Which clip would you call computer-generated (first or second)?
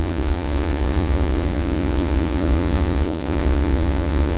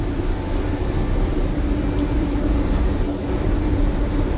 first